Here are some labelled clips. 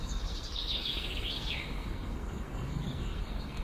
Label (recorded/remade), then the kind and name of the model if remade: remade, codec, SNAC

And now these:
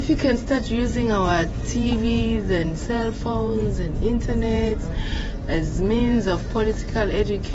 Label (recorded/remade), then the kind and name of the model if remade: remade, vocoder, Vocos